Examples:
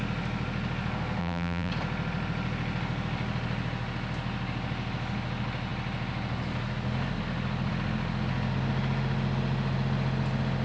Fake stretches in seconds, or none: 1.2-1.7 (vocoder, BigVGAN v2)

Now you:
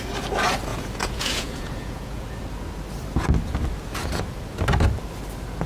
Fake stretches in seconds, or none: 0.7-2.4 (vocoder, Vocos)

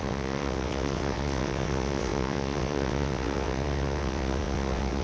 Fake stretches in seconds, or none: 0.0-5.0 (vocoder, WaveNeXt)

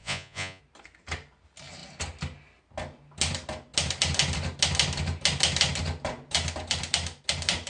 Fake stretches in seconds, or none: 0.0-0.6 (vocoder, Vocos)